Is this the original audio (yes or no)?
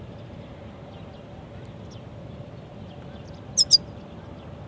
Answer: yes